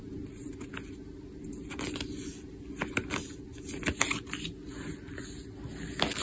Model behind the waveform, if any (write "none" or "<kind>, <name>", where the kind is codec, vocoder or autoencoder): none